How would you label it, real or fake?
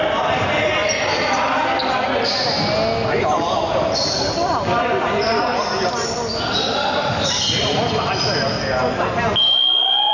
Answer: real